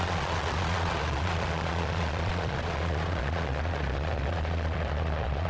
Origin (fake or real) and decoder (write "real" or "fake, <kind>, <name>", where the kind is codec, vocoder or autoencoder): fake, vocoder, Vocos